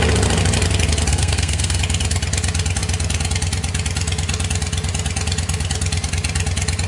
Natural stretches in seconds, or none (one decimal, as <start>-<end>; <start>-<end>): 0.0-1.1; 1.8-6.9